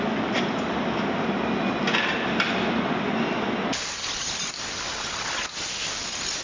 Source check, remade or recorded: recorded